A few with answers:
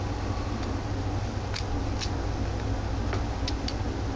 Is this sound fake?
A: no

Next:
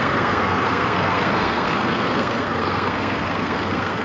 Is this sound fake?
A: yes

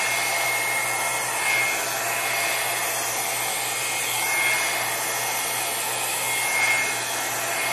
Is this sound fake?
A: no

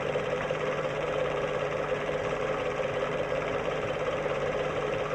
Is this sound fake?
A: yes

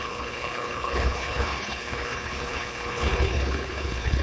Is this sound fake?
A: yes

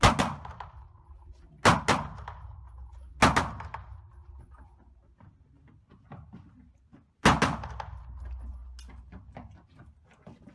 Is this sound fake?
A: no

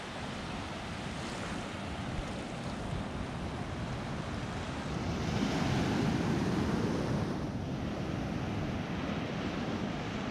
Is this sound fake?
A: no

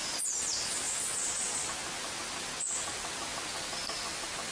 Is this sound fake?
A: no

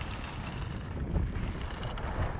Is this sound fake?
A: no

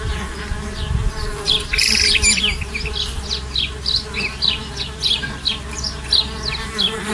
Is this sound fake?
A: no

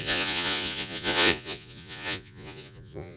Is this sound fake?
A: yes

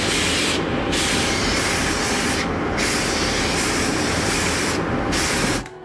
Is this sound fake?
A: no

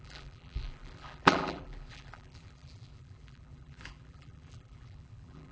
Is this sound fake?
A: yes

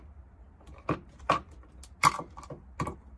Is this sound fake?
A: no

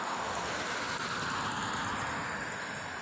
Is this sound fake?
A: no